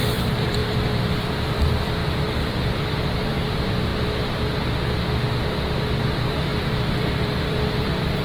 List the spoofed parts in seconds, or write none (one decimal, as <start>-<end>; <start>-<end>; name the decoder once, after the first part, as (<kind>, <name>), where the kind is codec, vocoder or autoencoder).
0.0-3.9 (vocoder, BigVGAN v2); 6.0-8.2